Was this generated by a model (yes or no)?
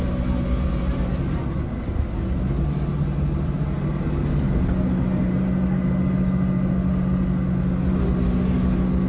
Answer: no